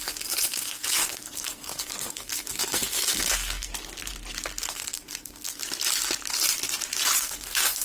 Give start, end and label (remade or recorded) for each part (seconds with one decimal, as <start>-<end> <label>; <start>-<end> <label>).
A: 0.0-3.7 remade; 3.7-4.6 recorded; 4.6-5.6 remade; 5.6-7.2 recorded; 7.2-7.8 remade